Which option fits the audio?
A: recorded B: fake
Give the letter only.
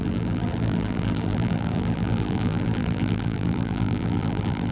B